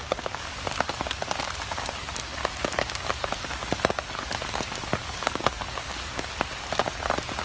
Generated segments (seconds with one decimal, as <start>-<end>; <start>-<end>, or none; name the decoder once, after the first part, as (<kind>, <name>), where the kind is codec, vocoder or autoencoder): 0.0-6.8 (codec, DAC)